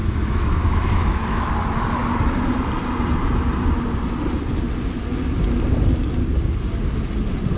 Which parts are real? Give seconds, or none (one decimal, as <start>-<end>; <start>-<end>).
1.5-7.6